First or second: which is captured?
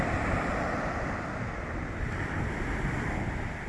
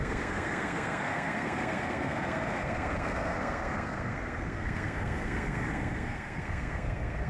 first